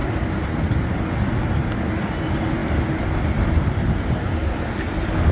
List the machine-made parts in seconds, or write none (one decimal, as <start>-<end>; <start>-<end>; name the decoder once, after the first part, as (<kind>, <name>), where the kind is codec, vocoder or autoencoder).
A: none